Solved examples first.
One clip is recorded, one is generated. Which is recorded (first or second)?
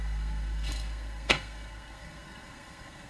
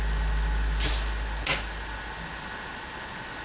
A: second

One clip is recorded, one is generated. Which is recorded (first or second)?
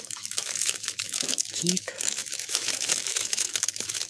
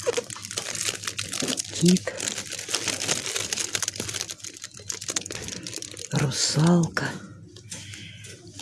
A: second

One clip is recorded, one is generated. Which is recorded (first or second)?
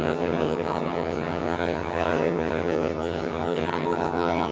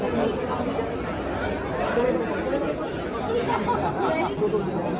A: second